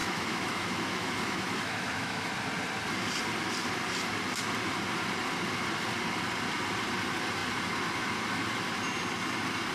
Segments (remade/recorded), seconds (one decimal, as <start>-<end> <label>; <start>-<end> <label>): 0.0-2.3 remade; 2.3-9.7 recorded